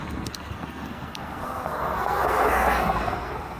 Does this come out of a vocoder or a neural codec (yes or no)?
yes